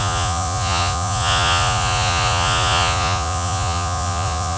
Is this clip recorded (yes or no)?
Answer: no